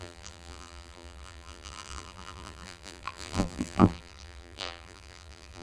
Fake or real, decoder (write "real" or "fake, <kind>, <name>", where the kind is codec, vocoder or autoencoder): fake, vocoder, BigVGAN v2